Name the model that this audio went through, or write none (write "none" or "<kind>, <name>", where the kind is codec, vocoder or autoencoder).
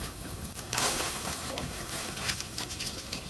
codec, SNAC